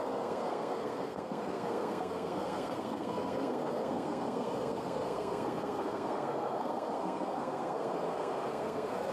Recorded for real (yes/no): no